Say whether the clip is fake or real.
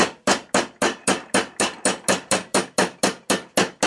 real